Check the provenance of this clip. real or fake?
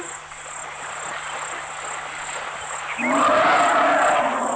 real